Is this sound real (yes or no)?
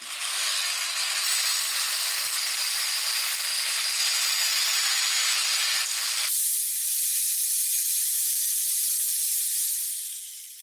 yes